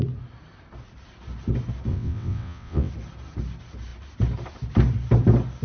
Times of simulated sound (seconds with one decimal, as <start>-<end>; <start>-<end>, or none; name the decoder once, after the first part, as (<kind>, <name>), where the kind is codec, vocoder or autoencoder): 1.9-2.9 (vocoder, WaveNeXt)

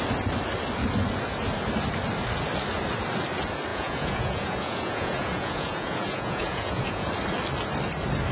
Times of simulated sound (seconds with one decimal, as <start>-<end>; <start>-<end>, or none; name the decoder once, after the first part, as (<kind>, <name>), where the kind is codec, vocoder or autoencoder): 3.7-7.1 (vocoder, Vocos)

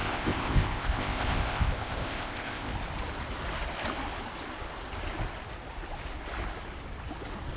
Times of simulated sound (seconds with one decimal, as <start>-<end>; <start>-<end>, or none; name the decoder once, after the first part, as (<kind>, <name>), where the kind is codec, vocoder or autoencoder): 0.0-2.7 (codec, ZipCodec)

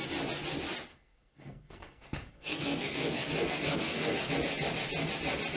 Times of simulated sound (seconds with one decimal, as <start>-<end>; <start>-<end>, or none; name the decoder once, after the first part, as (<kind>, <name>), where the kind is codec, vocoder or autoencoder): 0.9-4.3 (codec, SNAC)

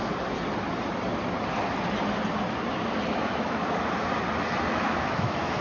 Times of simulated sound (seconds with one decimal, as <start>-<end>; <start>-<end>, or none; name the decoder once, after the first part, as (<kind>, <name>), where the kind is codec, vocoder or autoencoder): 3.1-3.6 (autoencoder, DAC-VAE); 4.7-5.6

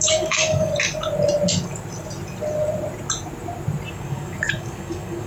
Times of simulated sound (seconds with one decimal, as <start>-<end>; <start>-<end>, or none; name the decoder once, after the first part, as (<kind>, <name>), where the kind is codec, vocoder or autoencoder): 0.0-0.7 (codec, DAC); 3.9-5.3

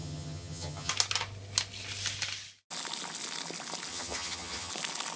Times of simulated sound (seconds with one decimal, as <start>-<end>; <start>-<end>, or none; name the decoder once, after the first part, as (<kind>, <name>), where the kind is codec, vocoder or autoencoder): 0.0-0.9 (vocoder, HiFi-GAN); 3.9-4.7

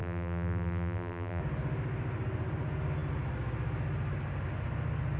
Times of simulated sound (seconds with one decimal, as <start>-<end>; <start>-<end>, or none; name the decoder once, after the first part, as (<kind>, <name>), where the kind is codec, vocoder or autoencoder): 0.0-1.4 (vocoder, BigVGAN v2)